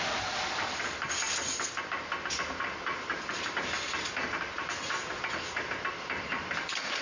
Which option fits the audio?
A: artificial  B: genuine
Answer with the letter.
B